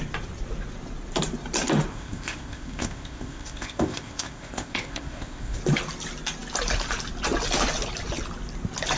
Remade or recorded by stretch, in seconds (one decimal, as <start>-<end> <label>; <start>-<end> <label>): 0.0-1.9 recorded; 1.9-5.6 remade; 5.6-9.0 recorded